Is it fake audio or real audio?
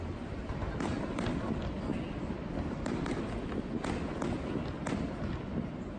real